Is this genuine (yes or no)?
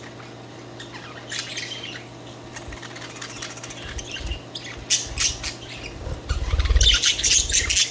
yes